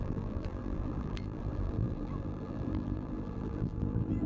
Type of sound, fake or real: fake